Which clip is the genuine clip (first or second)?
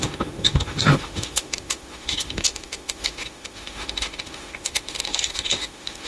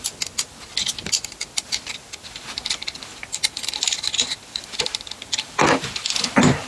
second